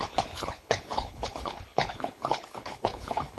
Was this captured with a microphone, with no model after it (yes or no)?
no